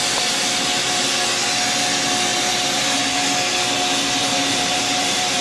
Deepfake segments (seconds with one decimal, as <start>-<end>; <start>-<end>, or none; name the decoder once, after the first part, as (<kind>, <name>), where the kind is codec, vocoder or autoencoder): 2.3-3.0 (vocoder, BigVGAN v2); 4.2-5.4